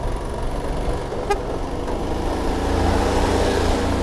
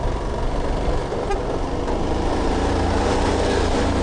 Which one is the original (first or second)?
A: first